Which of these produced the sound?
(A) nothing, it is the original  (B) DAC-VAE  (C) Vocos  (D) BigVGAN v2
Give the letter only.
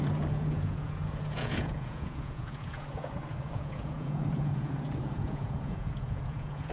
C